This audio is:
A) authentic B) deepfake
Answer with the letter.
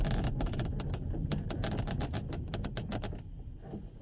A